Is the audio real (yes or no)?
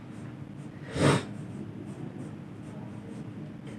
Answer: yes